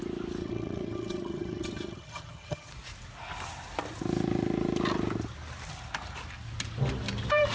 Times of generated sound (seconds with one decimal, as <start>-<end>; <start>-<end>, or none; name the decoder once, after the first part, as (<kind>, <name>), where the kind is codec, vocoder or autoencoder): 0.4-2.7 (vocoder, HiFi-GAN)